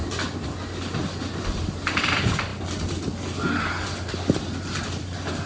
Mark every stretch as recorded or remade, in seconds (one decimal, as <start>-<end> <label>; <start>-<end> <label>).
0.0-5.5 recorded